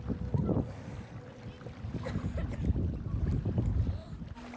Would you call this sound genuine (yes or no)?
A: yes